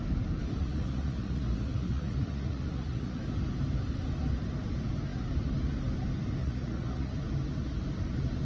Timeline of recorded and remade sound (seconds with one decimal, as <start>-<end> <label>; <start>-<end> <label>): 0.0-0.6 recorded; 0.6-3.2 remade; 3.2-6.4 recorded; 6.4-7.1 remade; 7.1-8.4 recorded